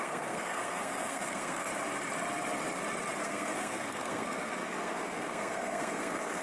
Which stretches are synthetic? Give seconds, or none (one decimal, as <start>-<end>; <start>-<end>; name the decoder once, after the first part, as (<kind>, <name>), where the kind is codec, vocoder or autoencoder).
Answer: 0.0-1.7 (codec, SNAC); 3.2-6.4